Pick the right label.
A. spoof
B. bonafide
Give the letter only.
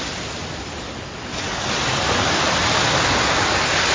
B